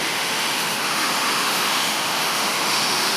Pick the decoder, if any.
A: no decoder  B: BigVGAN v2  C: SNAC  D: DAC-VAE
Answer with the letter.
D